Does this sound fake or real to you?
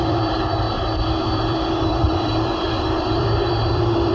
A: fake